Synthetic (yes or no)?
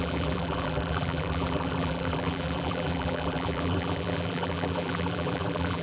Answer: yes